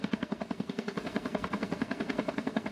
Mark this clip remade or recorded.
remade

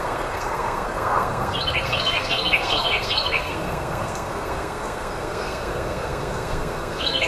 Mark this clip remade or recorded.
remade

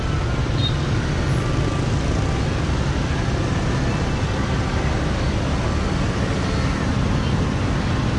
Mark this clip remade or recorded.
recorded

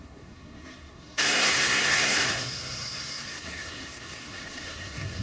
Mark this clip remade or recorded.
remade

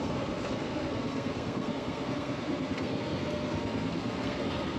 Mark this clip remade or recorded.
remade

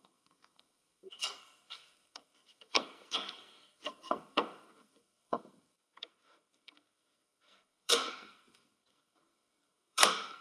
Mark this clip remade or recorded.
remade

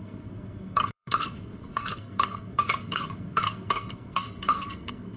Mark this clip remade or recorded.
remade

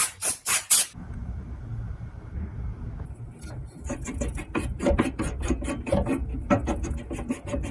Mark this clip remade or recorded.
recorded